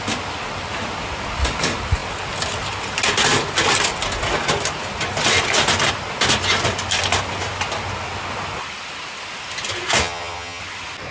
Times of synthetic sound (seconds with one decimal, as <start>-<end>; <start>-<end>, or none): 10.0-10.6